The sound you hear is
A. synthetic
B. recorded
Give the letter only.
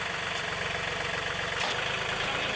B